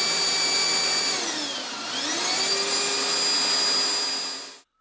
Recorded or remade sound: recorded